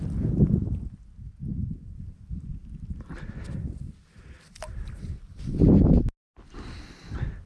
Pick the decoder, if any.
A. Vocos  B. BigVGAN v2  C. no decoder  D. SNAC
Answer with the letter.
C